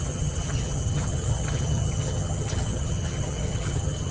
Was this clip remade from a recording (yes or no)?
yes